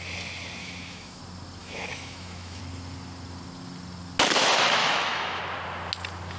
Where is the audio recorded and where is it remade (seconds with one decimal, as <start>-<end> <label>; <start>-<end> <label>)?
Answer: 0.0-0.6 recorded; 0.6-1.2 remade; 1.2-1.6 recorded; 1.6-2.6 remade; 2.6-4.8 recorded; 4.8-5.4 remade; 5.4-6.4 recorded

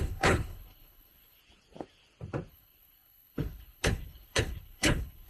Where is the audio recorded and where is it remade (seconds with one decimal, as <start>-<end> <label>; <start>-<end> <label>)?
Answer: 0.0-1.4 remade; 1.4-2.5 recorded; 2.5-5.3 remade

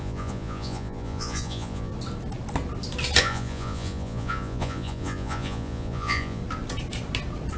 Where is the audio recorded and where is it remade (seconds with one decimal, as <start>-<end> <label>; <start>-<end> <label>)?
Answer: 0.0-1.9 remade; 1.9-3.2 recorded; 3.2-6.4 remade; 6.4-7.6 recorded

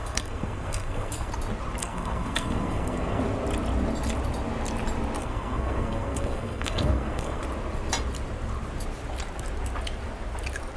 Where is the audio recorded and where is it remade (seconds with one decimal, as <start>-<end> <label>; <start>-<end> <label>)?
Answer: 0.0-1.3 remade; 1.3-1.8 recorded; 1.8-3.2 remade; 3.2-5.2 recorded; 5.2-7.4 remade; 7.4-10.8 recorded

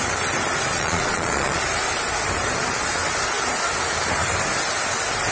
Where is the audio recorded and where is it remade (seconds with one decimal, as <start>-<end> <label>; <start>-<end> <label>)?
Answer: 0.0-0.7 recorded; 0.7-1.6 remade; 1.6-5.3 recorded

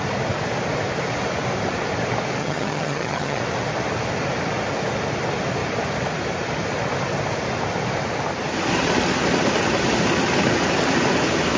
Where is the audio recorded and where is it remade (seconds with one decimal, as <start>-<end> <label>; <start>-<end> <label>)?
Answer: 0.0-2.4 recorded; 2.4-3.4 remade; 3.4-11.6 recorded

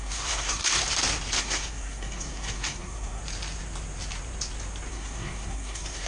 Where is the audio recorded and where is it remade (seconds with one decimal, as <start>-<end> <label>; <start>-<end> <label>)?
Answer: 0.0-0.6 remade; 0.6-1.4 recorded; 1.4-3.2 remade; 3.2-4.9 recorded; 4.9-6.1 remade

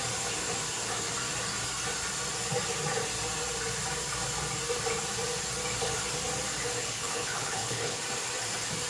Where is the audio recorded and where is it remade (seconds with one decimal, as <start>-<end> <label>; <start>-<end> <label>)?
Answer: 0.0-6.8 recorded; 6.8-8.0 remade; 8.0-8.9 recorded